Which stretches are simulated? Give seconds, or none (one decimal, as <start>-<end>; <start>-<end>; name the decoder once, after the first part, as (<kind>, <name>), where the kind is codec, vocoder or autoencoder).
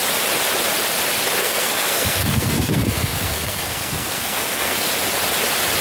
1.4-4.9 (codec, SNAC)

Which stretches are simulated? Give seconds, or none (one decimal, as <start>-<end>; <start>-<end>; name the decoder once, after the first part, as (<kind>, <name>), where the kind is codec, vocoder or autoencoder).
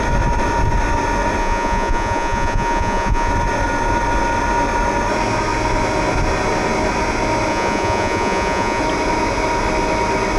1.4-3.3 (vocoder, Vocos); 7.5-8.8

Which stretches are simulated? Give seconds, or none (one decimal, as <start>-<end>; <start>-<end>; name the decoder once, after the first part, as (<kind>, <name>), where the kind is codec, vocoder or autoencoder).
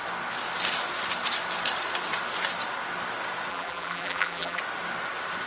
3.5-4.6 (vocoder, BigVGAN v2)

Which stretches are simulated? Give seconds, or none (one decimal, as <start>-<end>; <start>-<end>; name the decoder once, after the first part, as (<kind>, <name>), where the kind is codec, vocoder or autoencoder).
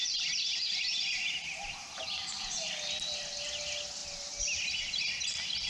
none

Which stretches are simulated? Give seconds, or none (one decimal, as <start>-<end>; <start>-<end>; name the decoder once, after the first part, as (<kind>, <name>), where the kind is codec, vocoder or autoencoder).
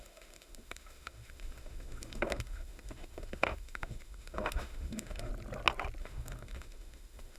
0.0-5.3 (autoencoder, DAC-VAE); 6.0-7.4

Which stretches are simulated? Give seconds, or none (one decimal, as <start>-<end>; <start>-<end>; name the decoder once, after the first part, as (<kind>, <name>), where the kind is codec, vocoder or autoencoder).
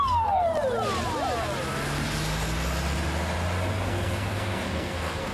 0.0-0.5 (codec, SNAC); 3.7-5.3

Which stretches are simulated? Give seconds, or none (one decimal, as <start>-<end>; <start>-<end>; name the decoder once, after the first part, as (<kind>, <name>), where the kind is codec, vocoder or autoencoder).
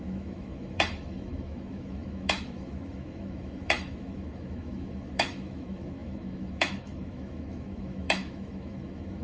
0.0-9.2 (autoencoder, DAC-VAE)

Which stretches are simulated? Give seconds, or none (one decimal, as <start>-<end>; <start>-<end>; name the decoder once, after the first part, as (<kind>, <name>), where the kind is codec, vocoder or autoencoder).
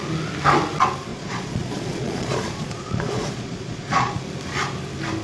1.1-4.2 (vocoder, Vocos)